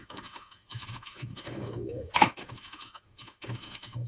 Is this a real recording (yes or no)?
no